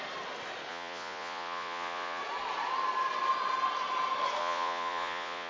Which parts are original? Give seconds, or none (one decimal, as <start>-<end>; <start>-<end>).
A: 0.0-0.7; 2.2-4.4